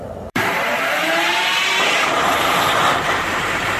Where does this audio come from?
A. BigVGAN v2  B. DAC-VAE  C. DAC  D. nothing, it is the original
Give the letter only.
A